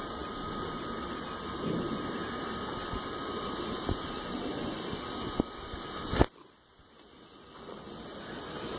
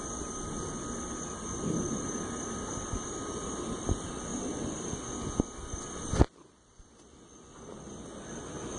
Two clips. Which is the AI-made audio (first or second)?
first